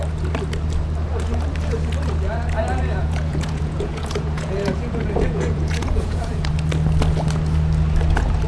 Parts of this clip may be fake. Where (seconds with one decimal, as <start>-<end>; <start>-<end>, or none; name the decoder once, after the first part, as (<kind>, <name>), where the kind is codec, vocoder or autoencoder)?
3.0-6.5 (vocoder, Vocos)